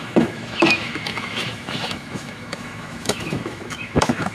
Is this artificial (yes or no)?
yes